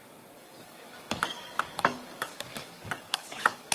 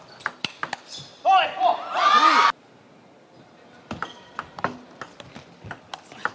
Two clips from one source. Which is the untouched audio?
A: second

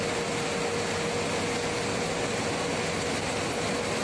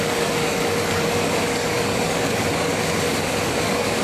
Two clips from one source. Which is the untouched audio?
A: first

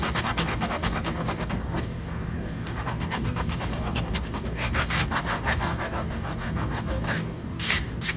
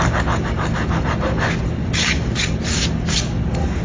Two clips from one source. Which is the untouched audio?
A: second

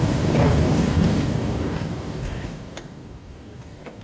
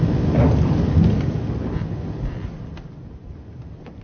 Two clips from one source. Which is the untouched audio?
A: second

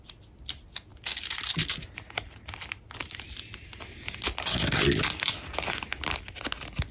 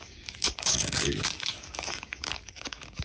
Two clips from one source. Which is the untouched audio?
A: first